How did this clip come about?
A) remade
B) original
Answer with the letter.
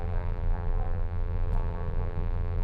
A